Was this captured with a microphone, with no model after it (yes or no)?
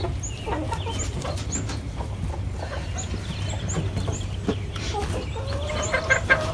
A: yes